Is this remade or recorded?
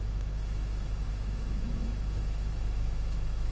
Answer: remade